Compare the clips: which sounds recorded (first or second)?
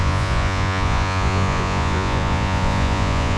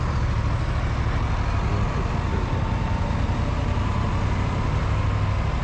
second